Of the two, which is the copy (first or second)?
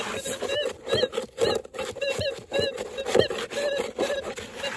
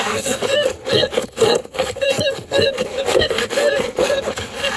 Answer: second